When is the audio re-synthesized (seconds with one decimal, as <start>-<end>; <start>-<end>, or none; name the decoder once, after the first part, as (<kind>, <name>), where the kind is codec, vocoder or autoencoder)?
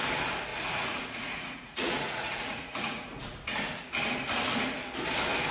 0.5-3.8 (vocoder, Vocos)